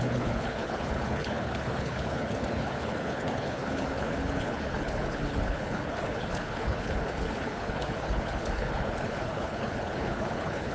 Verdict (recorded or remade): remade